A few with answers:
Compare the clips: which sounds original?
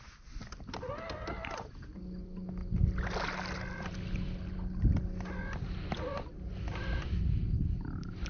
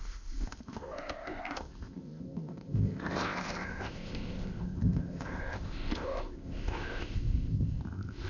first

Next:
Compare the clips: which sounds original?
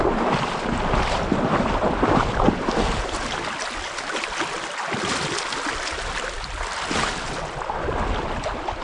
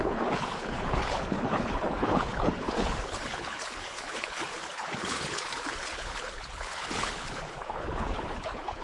first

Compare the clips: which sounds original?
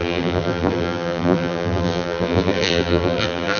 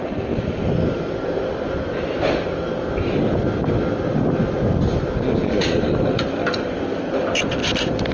second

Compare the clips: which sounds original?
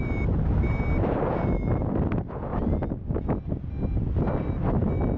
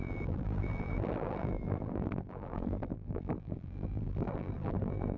first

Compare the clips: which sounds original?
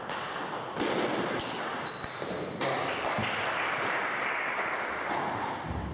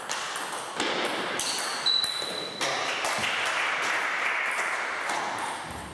second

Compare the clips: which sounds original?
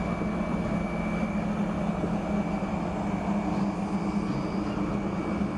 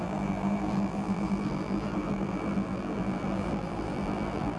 first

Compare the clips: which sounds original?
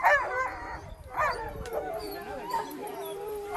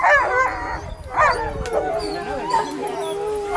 second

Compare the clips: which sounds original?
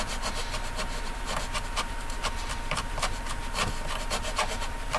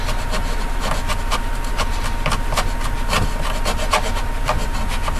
second